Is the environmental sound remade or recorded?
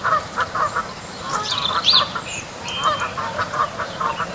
remade